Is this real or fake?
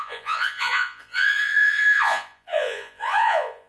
fake